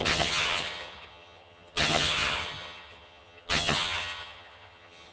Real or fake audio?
fake